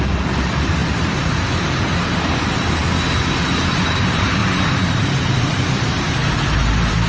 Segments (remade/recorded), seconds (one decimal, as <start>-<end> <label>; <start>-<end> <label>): 0.0-2.8 remade; 2.8-3.7 recorded; 3.7-7.1 remade